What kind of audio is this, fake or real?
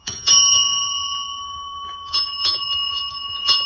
fake